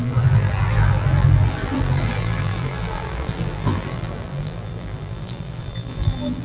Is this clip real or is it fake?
fake